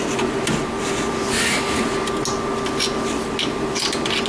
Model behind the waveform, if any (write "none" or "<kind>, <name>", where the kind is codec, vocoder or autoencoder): none